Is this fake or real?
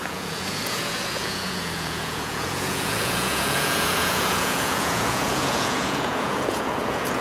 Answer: fake